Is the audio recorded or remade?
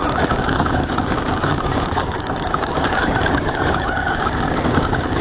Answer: remade